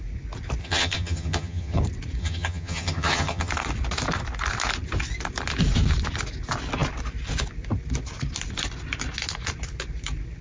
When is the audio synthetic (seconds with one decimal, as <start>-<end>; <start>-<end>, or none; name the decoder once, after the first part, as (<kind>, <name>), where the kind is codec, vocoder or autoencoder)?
0.6-1.8 (vocoder, HiFi-GAN); 2.2-3.5